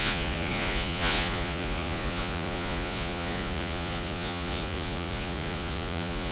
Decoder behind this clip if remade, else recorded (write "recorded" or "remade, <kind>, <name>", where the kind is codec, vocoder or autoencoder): remade, vocoder, Vocos